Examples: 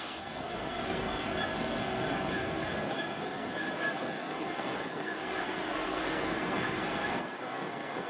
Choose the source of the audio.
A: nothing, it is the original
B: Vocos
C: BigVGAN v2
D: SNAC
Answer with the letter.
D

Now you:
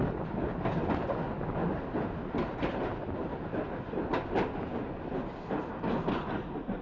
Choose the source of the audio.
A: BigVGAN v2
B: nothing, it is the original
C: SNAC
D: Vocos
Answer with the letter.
B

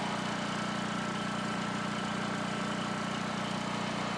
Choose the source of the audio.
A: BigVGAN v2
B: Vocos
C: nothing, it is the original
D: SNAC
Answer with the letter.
C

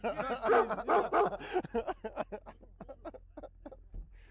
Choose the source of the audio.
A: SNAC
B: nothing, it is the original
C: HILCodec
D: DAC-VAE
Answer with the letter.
B